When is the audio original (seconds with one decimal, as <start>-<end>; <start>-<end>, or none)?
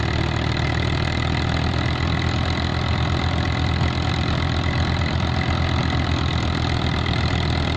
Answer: 0.0-7.8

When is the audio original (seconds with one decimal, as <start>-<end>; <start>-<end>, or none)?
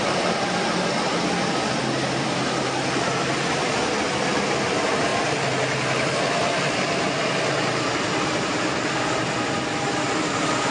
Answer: 0.0-10.7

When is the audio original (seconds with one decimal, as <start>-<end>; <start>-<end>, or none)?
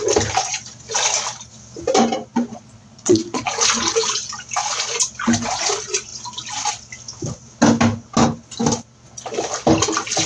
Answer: 0.0-2.3; 3.5-10.3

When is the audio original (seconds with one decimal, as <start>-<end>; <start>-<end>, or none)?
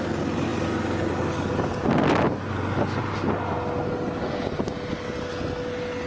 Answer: 0.0-6.1